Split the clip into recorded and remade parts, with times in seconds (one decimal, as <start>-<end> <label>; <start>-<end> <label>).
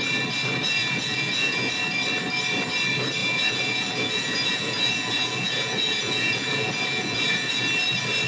0.0-0.8 recorded; 0.8-1.7 remade; 1.7-3.2 recorded; 3.2-7.6 remade; 7.6-8.3 recorded